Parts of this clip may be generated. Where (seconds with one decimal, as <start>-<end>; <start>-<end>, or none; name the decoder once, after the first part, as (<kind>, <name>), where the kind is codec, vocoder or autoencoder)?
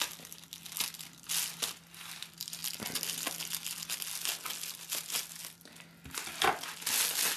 none